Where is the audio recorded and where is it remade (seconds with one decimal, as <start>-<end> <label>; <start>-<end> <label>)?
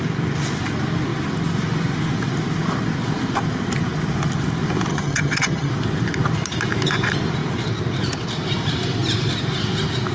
0.0-4.9 recorded; 4.9-5.7 remade; 5.7-10.1 recorded